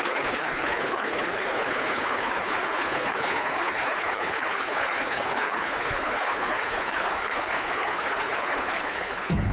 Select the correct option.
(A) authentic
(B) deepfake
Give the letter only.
B